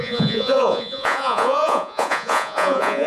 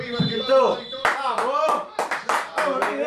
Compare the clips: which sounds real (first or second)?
second